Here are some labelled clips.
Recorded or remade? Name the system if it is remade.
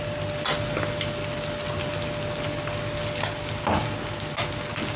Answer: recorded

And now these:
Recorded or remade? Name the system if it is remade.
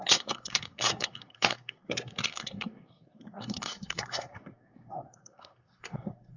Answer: remade, codec, SNAC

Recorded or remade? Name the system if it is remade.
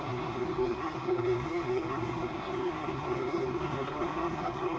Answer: remade, codec, SNAC